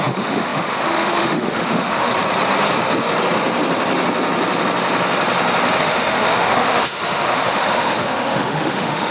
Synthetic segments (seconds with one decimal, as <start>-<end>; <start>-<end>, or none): 0.0-2.1; 5.8-9.1